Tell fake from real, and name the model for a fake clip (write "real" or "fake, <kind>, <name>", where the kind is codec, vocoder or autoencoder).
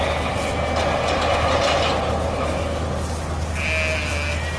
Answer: real